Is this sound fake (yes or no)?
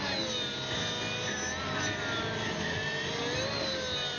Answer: no